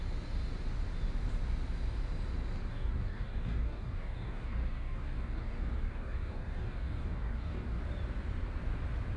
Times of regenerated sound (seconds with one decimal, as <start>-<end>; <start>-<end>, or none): 2.7-7.8